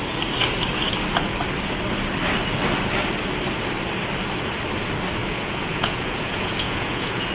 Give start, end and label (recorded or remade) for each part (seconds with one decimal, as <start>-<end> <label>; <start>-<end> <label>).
0.0-5.2 recorded; 5.2-7.3 remade